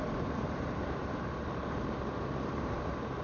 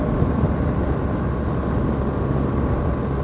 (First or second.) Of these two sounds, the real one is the second